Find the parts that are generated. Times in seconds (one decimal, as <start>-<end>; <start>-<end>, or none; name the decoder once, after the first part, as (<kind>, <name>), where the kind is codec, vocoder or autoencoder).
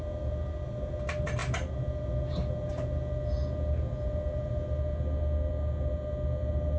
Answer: none